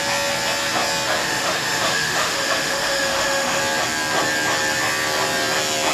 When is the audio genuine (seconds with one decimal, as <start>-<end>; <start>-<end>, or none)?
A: 0.0-1.2; 3.6-5.9